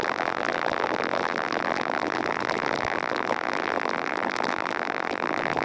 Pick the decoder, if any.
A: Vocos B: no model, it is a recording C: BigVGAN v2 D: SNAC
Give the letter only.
C